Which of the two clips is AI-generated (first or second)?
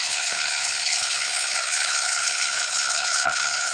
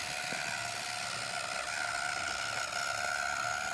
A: first